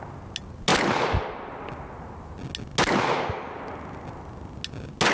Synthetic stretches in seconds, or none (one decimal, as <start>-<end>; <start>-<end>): none